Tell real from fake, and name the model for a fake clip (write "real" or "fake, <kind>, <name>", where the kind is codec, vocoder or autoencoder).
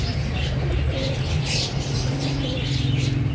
real